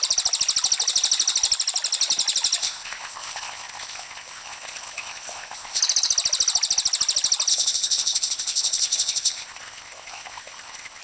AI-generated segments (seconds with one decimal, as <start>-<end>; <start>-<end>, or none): 2.6-5.8; 7.5-11.0